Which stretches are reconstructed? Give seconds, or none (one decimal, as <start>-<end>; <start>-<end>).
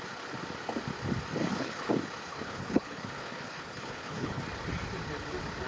1.4-1.9; 2.3-4.4